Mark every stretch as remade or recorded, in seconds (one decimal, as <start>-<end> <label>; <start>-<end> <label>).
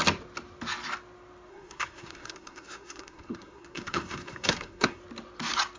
0.0-1.5 recorded; 1.5-5.0 remade; 5.0-5.8 recorded